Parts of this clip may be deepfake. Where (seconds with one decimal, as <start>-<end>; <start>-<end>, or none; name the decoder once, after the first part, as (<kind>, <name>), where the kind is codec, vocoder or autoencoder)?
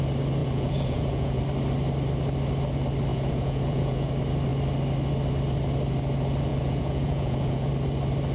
0.4-1.4 (vocoder, Vocos); 3.1-4.1; 6.5-7.7